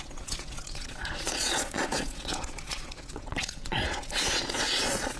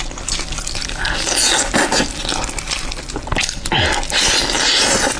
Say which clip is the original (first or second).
second